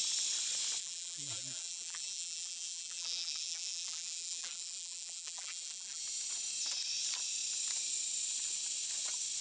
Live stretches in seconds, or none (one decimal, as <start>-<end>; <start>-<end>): 0.0-0.8; 6.0-9.4